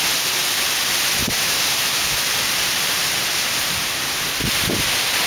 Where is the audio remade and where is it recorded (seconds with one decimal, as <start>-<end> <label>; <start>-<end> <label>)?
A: 0.0-1.2 recorded; 1.2-3.7 remade; 3.7-5.3 recorded